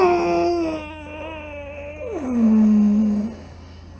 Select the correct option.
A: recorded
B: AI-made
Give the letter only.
A